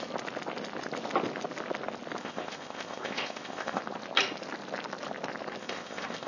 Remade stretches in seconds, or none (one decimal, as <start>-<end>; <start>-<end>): 2.2-3.8; 5.6-6.3